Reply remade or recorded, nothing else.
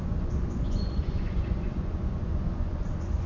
remade